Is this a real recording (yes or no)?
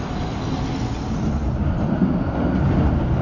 yes